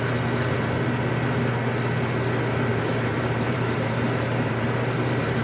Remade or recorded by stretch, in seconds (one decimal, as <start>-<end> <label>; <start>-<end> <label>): 0.0-2.7 recorded; 2.7-5.4 remade